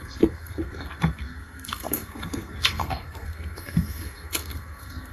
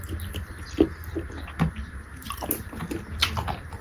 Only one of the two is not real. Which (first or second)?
first